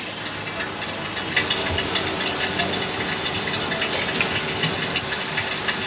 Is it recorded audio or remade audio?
recorded